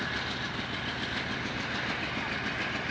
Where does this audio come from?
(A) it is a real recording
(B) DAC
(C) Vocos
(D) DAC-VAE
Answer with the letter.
A